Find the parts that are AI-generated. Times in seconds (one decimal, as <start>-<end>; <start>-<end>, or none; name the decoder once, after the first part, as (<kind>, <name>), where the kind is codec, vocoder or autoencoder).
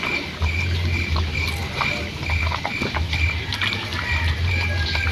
none